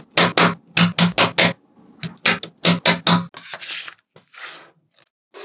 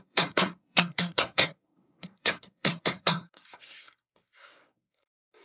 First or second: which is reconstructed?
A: second